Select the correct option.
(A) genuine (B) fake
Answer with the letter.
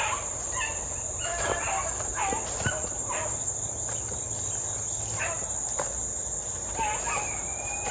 A